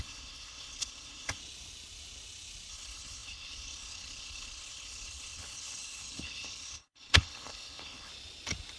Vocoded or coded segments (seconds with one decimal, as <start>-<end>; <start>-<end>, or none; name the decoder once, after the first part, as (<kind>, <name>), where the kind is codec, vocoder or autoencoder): 0.0-1.4 (codec, HILCodec); 2.7-8.1